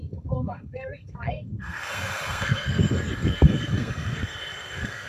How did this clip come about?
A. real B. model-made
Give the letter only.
B